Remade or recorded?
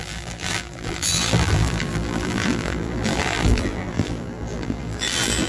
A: remade